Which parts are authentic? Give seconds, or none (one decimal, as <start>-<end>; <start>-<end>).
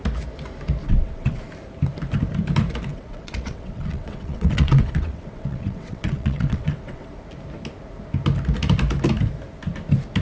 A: 0.0-0.8; 1.4-2.9; 7.1-10.2